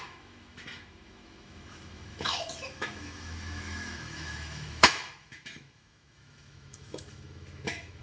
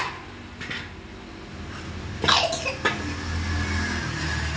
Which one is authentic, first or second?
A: second